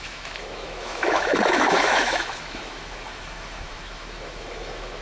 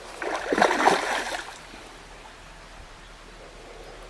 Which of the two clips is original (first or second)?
second